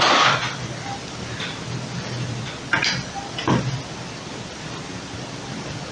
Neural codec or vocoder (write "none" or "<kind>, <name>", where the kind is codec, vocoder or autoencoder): none